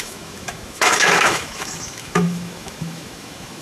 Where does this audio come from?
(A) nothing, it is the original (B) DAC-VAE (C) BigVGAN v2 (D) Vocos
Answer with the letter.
B